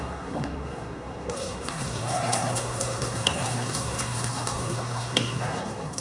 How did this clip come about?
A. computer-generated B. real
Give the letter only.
A